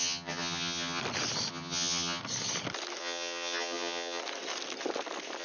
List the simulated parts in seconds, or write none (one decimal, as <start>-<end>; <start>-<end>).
0.0-1.0; 1.5-2.2; 3.0-4.2

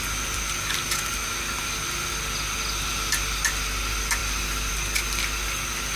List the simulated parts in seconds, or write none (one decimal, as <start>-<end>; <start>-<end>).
none

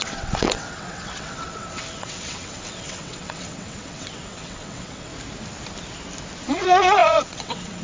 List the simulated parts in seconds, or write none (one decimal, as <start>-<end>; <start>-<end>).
0.0-5.1; 6.5-7.8

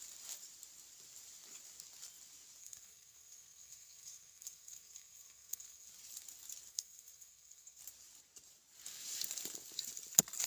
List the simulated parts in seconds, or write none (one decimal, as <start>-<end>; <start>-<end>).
2.6-5.9; 6.7-7.8